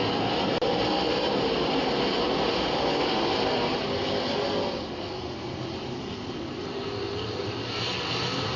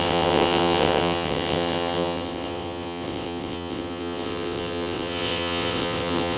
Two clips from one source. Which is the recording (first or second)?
first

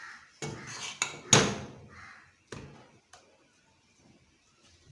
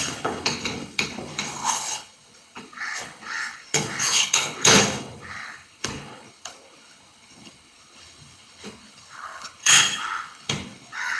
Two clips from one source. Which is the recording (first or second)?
first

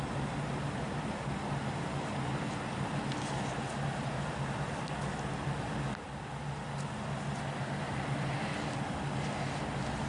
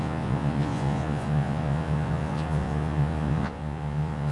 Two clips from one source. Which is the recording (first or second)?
first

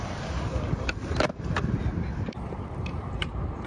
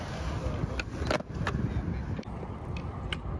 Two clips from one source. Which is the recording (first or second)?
second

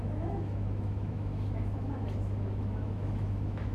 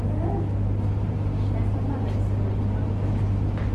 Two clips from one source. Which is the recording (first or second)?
second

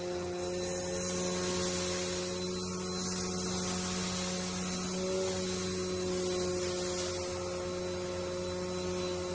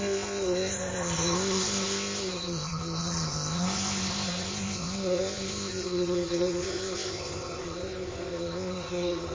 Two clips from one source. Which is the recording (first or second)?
first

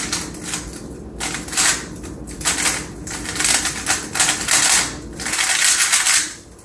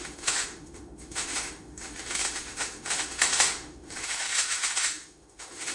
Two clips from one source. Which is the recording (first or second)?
first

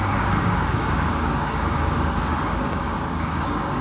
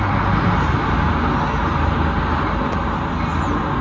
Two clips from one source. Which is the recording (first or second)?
second